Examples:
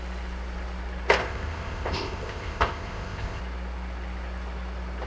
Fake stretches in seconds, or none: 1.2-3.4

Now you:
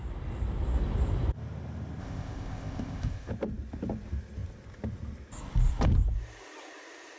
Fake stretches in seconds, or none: 2.0-3.3

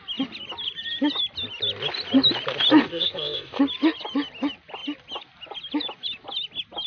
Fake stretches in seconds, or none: 2.8-3.6

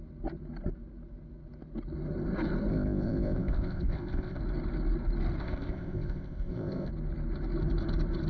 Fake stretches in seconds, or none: 2.7-4.4; 5.4-6.9

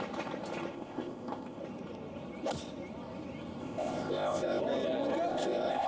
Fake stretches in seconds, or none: 0.7-1.6; 3.6-4.6; 5.3-5.9

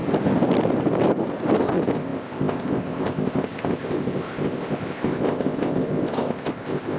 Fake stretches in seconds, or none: 1.6-7.0

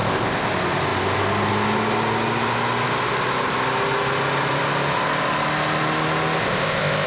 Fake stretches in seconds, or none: 0.0-0.5; 6.4-7.1